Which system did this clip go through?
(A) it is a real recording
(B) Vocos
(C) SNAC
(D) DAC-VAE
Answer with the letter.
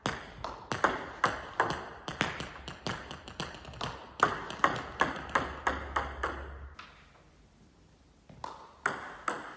A